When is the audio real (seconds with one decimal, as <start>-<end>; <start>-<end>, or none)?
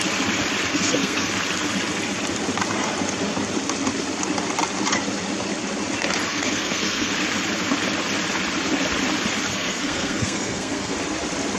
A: 0.0-0.7; 1.3-6.3; 7.1-9.5; 10.9-11.6